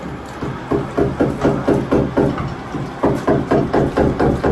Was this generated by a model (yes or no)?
no